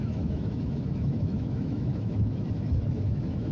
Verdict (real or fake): fake